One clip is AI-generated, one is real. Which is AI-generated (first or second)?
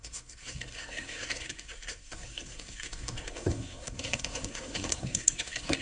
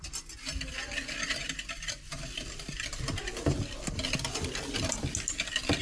first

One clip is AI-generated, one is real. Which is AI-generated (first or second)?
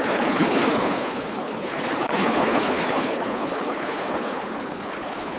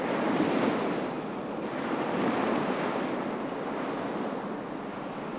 first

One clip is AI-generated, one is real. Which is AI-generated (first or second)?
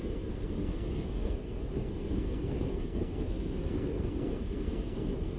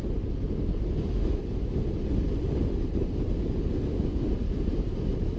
first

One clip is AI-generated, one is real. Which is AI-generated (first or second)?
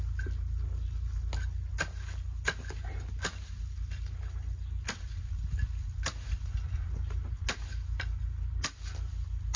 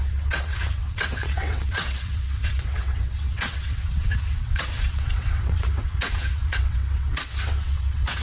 second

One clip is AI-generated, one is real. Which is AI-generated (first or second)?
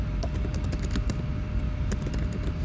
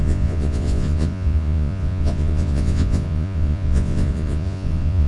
second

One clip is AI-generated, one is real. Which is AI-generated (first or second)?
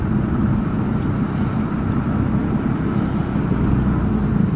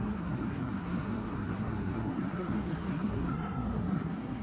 second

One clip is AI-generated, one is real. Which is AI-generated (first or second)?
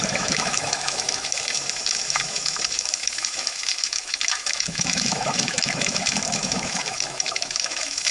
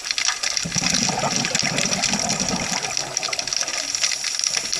first